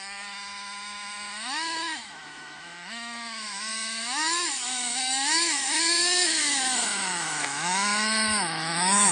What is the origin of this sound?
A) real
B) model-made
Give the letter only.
B